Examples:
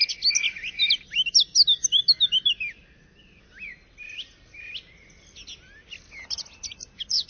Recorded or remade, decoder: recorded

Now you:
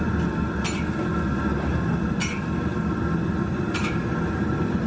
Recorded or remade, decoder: recorded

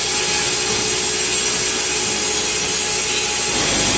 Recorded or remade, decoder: recorded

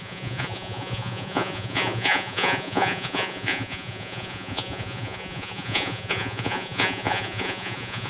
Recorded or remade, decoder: remade, vocoder, Vocos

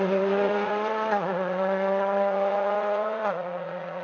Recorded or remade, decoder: remade, vocoder, Vocos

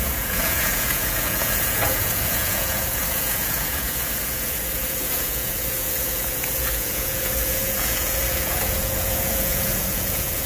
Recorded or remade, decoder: remade, vocoder, Vocos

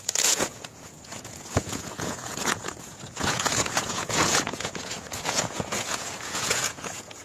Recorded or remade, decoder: remade, vocoder, Vocos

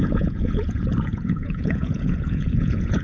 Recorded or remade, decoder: remade, vocoder, Vocos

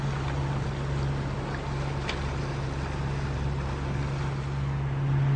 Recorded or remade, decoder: recorded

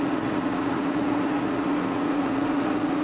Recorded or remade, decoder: remade, vocoder, Vocos